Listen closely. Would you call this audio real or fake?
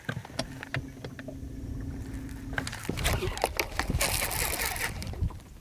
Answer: real